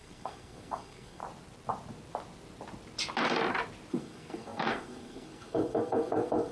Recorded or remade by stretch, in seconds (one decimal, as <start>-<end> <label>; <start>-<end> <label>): 0.0-1.2 remade; 1.2-3.9 recorded; 3.9-6.5 remade